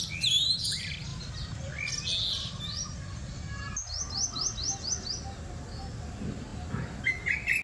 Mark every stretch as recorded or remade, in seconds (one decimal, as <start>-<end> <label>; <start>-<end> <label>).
0.0-7.6 recorded